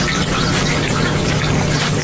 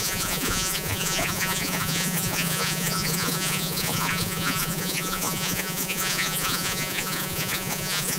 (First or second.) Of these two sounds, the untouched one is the first